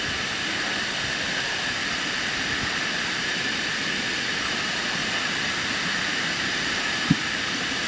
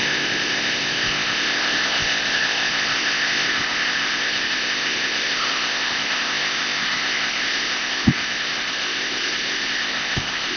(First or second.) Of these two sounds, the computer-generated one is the second